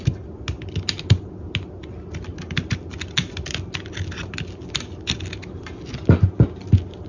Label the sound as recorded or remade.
recorded